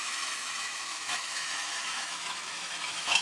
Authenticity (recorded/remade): remade